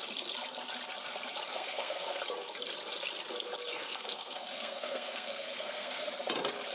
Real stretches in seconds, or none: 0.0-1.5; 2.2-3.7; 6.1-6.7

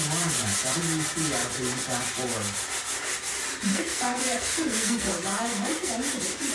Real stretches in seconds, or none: 0.0-3.7; 5.9-6.5

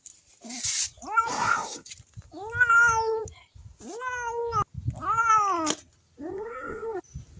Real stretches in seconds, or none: 0.0-1.3; 1.9-6.3; 7.0-7.4

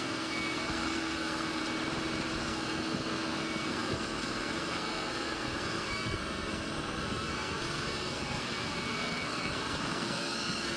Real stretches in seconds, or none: 1.6-2.4

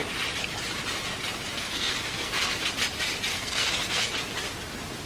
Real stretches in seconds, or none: 0.0-1.5; 2.7-3.3; 4.1-5.1